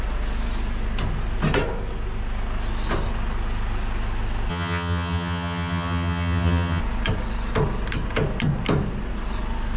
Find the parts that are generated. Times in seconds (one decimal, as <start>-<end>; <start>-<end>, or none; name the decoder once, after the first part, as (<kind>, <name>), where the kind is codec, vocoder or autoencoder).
4.5-6.8 (vocoder, HiFi-GAN)